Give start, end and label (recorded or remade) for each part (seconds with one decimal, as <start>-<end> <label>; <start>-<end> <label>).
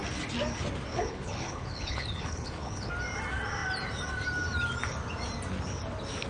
0.0-0.9 recorded; 0.9-2.9 remade; 2.9-6.3 recorded